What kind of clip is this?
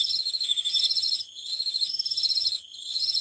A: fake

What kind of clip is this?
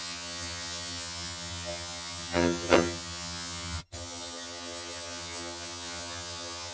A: fake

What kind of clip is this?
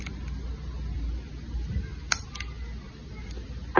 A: real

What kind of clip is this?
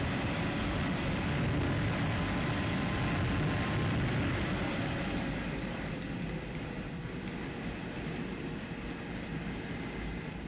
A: real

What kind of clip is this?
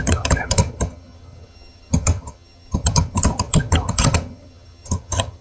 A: fake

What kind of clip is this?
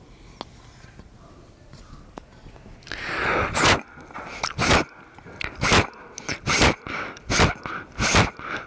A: real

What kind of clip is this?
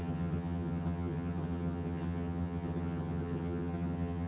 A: fake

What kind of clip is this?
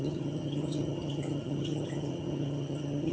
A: fake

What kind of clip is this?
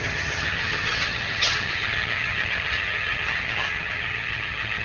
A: fake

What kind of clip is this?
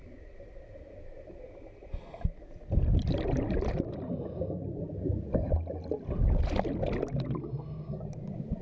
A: real